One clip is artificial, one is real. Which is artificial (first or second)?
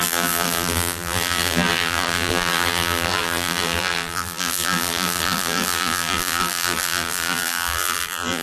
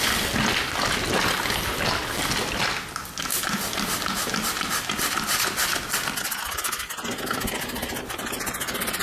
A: first